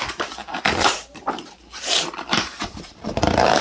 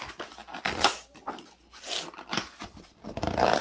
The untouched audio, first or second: second